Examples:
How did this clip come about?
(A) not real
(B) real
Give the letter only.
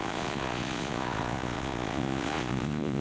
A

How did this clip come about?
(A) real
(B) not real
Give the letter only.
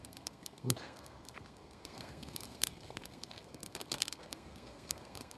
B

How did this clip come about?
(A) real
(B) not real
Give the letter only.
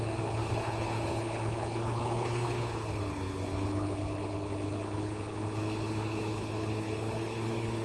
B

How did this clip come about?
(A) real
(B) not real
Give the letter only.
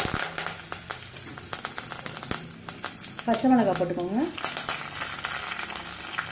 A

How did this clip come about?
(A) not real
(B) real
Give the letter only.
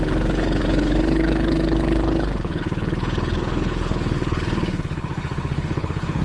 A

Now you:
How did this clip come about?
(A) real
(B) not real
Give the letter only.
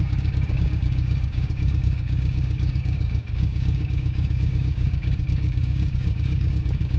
B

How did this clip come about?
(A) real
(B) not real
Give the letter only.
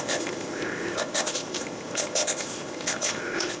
B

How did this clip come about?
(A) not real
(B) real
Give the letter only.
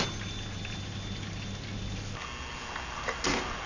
B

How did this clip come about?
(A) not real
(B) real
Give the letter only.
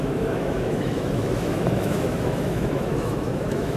A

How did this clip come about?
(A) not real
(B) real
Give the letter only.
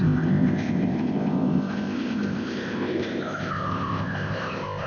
A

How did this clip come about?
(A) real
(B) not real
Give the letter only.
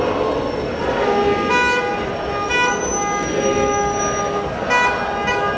A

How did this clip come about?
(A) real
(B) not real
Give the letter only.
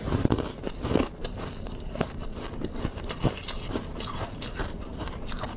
B